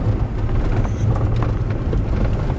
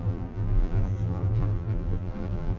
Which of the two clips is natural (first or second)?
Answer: first